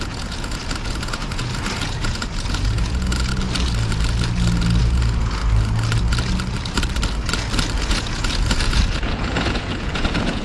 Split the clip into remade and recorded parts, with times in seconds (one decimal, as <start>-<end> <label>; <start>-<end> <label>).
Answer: 0.0-3.3 remade; 3.3-4.8 recorded; 4.8-5.4 remade; 5.4-7.9 recorded; 7.9-10.4 remade